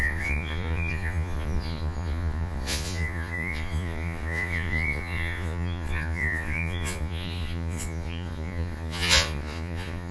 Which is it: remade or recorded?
remade